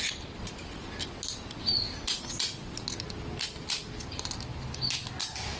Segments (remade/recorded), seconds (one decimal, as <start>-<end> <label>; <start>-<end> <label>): 0.0-5.6 recorded